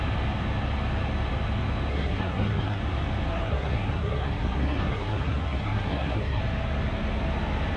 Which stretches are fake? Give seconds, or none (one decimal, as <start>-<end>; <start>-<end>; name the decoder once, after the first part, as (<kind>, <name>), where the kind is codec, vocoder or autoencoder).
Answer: 1.9-2.8 (codec, SNAC); 3.3-6.4